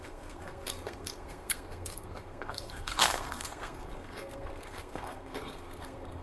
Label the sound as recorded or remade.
remade